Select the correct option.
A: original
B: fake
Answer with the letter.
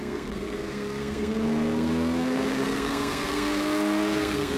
B